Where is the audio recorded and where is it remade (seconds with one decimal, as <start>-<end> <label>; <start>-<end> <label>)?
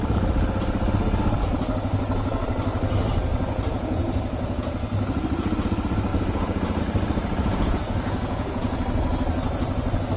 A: 0.0-3.3 recorded; 3.3-4.7 remade; 4.7-6.1 recorded; 6.1-6.8 remade; 6.8-7.4 recorded; 7.4-8.8 remade; 8.8-10.2 recorded